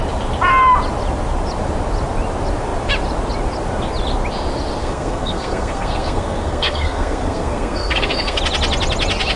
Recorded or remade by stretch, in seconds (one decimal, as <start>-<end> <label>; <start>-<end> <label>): 0.0-4.8 recorded; 4.8-8.4 remade; 8.4-9.4 recorded